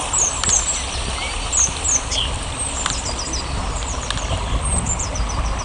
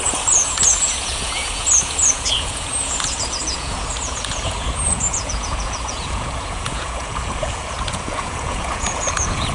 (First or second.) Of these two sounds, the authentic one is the first